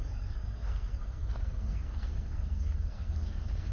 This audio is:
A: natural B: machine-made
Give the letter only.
B